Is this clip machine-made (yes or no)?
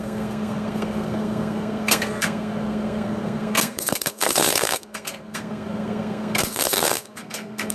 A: yes